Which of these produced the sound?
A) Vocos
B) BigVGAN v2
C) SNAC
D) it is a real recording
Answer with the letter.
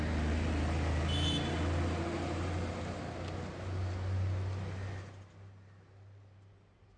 D